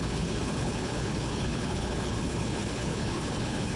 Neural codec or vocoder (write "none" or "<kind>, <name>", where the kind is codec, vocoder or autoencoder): codec, HILCodec